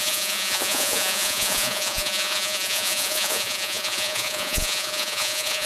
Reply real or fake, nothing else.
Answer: fake